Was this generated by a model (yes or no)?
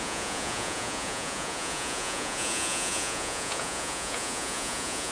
yes